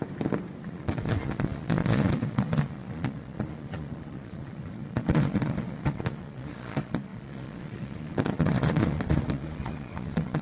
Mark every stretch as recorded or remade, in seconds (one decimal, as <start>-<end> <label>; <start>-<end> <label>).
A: 0.0-0.6 recorded; 0.6-10.4 remade